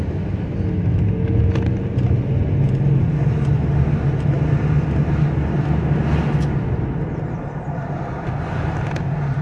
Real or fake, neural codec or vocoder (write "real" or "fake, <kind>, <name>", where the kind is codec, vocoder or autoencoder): real